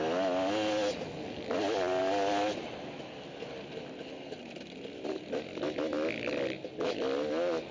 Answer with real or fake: real